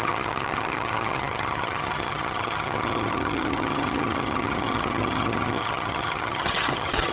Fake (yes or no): yes